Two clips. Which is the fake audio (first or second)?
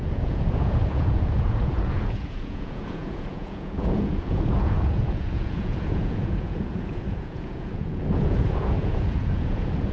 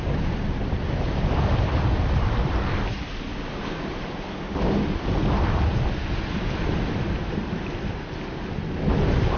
first